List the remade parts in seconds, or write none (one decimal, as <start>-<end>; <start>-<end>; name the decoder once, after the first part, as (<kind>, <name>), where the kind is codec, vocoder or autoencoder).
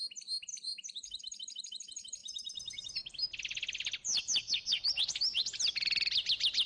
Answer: 0.5-1.2 (vocoder, BigVGAN v2); 2.2-2.8; 4.7-5.4